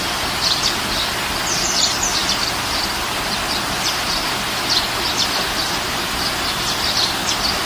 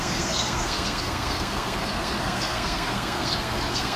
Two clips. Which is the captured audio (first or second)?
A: first